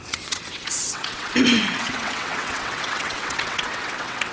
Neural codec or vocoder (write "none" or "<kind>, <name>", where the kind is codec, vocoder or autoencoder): vocoder, WaveNeXt